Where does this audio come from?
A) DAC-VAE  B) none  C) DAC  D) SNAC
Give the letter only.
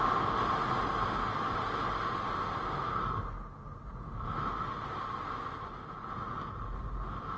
B